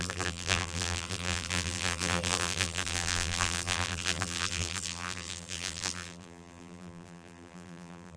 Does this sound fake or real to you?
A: fake